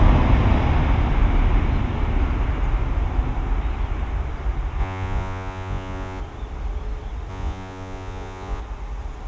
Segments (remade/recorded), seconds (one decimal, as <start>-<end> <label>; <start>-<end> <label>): 0.0-4.8 recorded; 4.8-6.2 remade; 6.2-7.3 recorded; 7.3-8.6 remade; 8.6-9.3 recorded